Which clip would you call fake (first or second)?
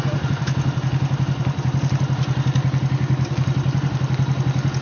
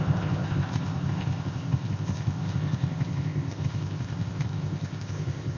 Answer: second